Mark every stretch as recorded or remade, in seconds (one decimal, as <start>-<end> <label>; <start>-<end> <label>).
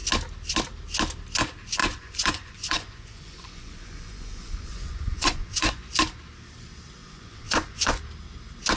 0.0-1.8 recorded; 1.8-6.0 remade; 6.0-7.0 recorded; 7.0-8.0 remade; 8.0-8.8 recorded